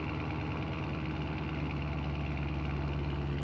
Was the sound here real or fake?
real